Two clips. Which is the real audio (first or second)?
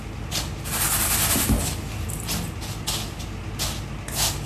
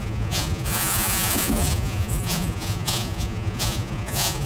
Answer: first